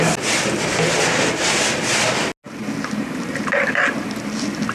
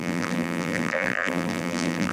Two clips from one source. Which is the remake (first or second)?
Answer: second